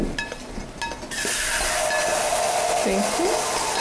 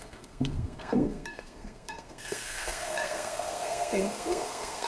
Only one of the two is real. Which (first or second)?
first